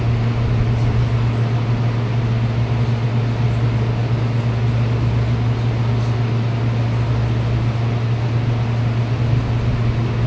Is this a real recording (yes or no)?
yes